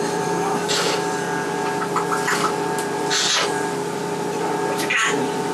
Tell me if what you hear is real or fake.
real